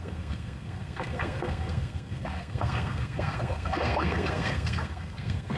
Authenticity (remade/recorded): remade